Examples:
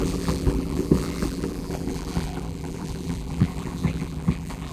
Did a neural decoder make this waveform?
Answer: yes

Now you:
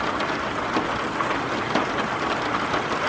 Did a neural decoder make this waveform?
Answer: no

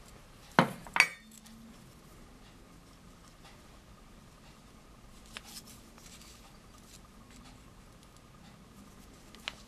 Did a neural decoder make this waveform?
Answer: no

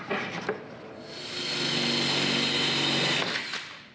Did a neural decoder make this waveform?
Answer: no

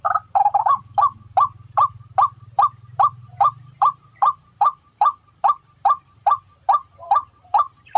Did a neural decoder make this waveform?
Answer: yes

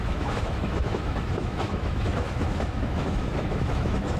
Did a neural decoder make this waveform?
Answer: yes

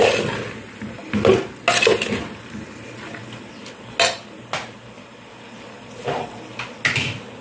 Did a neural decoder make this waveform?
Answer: no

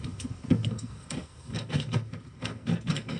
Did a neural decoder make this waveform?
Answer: yes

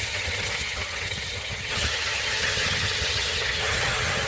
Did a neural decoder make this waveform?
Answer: yes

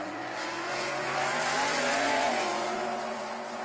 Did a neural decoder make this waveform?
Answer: yes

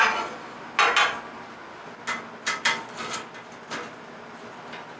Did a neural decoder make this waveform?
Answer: no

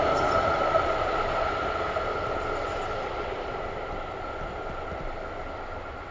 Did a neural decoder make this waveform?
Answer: no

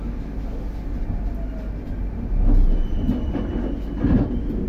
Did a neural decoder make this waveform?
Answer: no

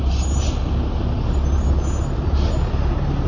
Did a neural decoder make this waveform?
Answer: no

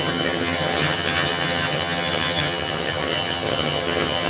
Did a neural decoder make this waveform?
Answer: yes